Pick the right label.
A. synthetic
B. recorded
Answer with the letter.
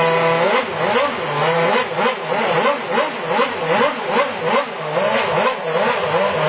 B